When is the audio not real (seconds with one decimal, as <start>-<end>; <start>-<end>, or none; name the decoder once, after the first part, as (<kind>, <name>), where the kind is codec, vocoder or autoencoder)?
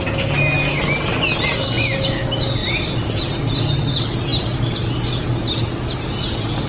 none